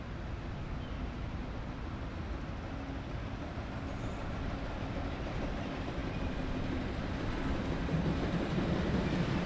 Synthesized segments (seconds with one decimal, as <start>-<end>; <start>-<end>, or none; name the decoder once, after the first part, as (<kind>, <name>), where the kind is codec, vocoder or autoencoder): none